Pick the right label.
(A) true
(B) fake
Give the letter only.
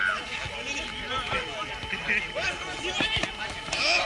A